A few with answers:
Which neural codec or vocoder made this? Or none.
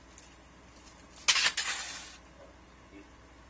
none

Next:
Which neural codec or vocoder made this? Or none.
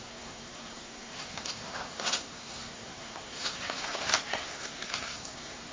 codec, SNAC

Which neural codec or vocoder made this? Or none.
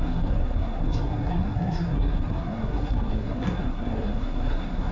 codec, SNAC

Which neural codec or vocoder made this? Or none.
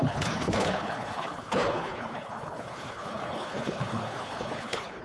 codec, HILCodec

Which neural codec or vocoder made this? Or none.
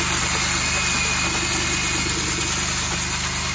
none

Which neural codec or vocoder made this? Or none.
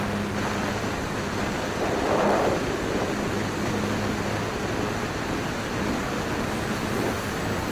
none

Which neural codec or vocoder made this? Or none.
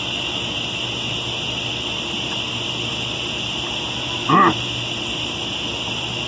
none